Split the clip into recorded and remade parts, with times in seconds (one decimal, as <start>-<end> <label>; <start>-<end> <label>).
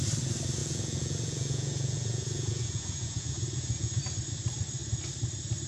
0.0-0.6 recorded; 0.6-4.0 remade; 4.0-5.7 recorded